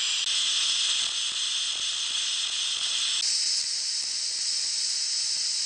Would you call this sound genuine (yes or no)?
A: yes